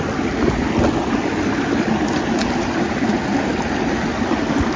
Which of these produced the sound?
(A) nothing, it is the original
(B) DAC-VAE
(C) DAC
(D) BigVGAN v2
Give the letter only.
A